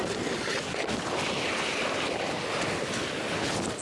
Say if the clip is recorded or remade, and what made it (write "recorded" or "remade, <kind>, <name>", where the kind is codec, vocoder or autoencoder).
recorded